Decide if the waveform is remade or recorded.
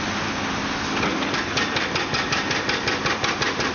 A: recorded